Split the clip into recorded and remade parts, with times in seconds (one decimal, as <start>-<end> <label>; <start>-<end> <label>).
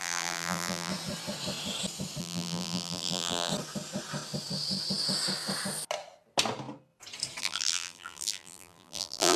0.0-0.9 remade; 0.9-2.2 recorded; 2.2-3.5 remade; 3.5-7.4 recorded; 7.4-9.4 remade